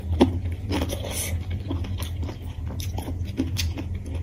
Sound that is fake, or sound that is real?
real